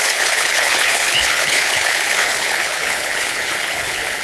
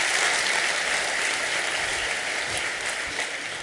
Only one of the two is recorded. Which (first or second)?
second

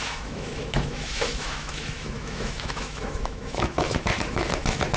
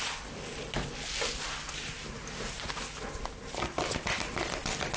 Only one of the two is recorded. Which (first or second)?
second